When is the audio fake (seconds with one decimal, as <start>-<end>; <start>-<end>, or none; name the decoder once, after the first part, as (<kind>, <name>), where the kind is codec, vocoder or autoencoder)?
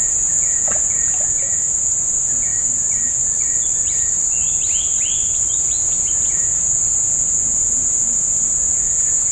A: 0.0-2.5 (vocoder, Vocos); 5.6-9.3